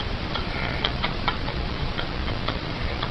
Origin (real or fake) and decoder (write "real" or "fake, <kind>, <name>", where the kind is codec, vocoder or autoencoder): fake, vocoder, Vocos